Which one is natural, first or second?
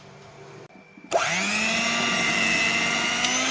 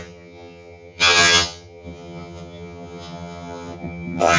first